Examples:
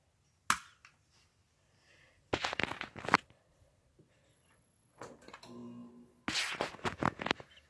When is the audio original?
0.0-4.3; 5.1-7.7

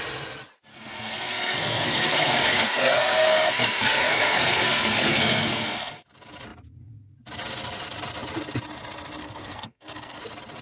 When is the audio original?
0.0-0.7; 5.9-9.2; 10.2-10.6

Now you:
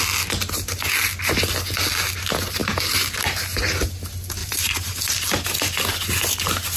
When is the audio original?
0.0-2.6; 3.2-4.4; 5.0-6.8

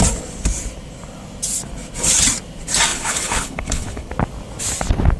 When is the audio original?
0.0-2.9; 4.1-5.2

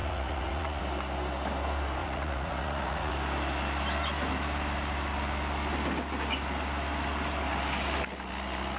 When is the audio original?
0.8-2.0; 3.1-8.8

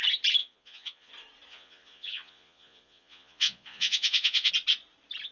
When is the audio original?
0.0-0.4; 1.1-1.5; 4.5-5.3